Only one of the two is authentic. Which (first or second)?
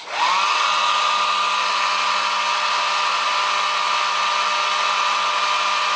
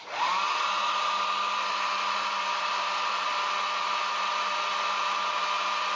first